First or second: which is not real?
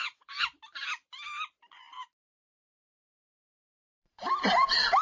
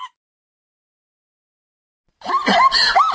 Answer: first